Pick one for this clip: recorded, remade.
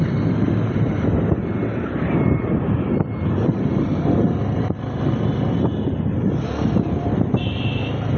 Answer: recorded